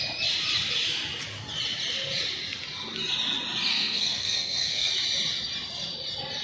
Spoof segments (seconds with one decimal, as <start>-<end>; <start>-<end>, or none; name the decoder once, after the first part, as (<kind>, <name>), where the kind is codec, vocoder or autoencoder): 3.7-4.9 (codec, SNAC)